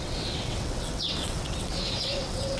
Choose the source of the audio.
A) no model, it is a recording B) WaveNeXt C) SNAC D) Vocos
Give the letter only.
B